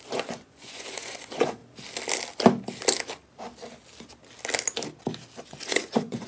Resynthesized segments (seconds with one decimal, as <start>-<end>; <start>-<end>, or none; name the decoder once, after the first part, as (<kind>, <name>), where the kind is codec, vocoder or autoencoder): 0.0-1.6 (vocoder, Vocos); 5.4-6.3